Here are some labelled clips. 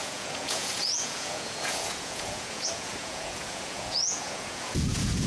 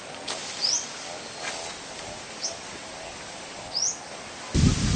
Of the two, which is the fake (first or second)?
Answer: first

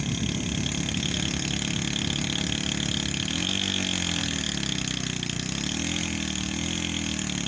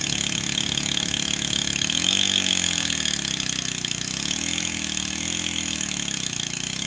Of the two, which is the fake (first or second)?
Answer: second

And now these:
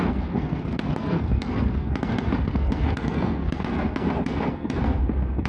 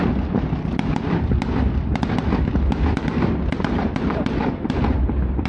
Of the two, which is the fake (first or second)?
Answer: first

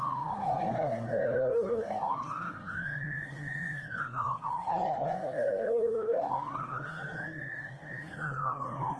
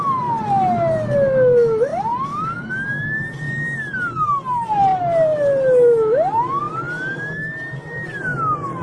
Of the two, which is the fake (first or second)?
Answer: first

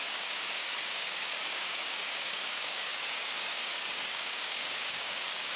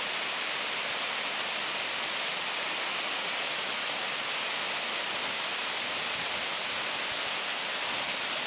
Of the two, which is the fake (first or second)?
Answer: first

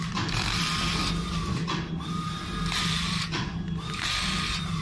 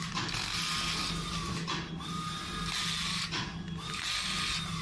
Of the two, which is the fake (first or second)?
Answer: first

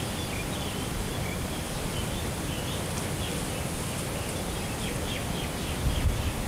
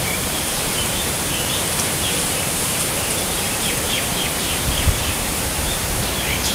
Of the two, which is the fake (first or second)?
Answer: second